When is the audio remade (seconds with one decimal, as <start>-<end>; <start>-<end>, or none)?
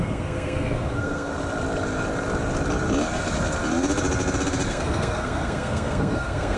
0.0-1.3; 4.7-6.6